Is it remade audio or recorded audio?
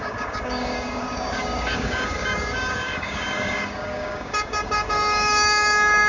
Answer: remade